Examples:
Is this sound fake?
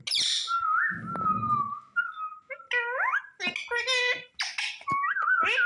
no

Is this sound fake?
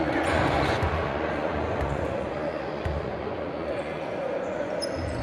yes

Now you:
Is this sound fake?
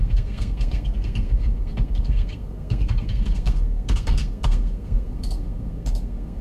yes